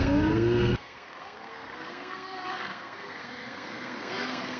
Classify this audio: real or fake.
fake